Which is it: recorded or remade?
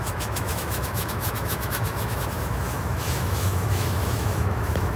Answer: remade